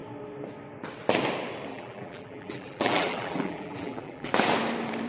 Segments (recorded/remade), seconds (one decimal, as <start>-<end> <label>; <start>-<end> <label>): 0.0-1.7 recorded; 1.7-4.3 remade; 4.3-5.1 recorded